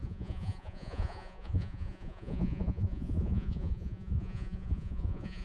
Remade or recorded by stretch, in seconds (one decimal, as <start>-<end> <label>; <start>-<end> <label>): 0.0-5.4 remade